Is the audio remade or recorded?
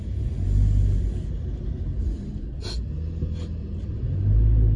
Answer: recorded